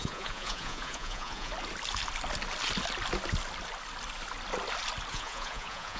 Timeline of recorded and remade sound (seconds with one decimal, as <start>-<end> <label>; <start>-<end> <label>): 0.0-1.5 remade; 1.5-5.1 recorded; 5.1-6.0 remade